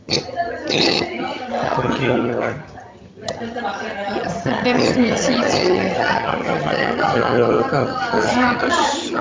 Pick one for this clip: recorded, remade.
remade